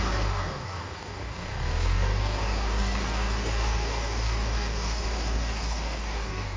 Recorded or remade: remade